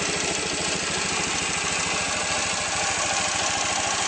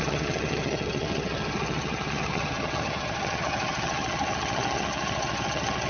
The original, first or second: first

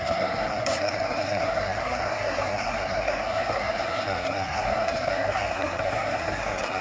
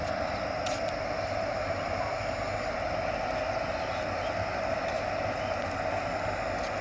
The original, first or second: second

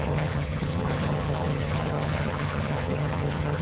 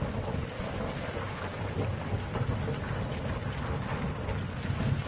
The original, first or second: second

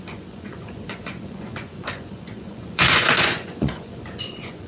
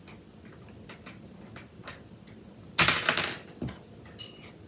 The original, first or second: second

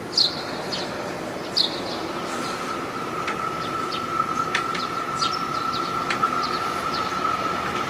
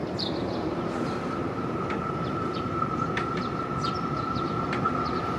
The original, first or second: first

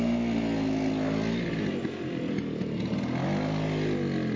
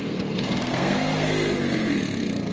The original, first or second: first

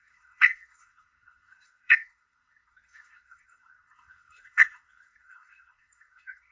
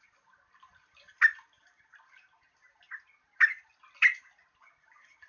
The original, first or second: second